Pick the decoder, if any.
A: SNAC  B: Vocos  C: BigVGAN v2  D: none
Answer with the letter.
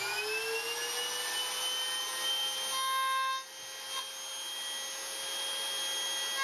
D